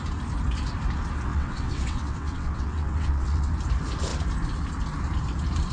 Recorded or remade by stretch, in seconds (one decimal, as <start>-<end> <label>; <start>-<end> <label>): 0.0-1.3 recorded; 1.3-3.5 remade; 3.5-5.7 recorded